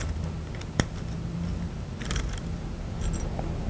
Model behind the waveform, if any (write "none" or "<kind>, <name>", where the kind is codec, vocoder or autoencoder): none